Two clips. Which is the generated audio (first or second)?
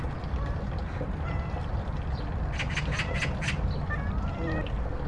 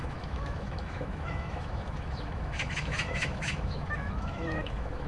second